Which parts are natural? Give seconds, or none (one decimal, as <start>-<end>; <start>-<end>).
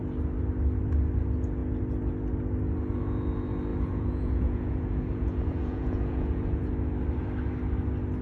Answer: 0.0-3.7; 6.7-8.2